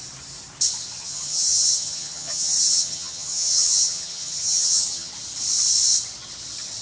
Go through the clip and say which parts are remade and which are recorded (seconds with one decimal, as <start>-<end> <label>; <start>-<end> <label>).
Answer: 0.0-1.0 recorded; 1.0-5.1 remade; 5.1-6.8 recorded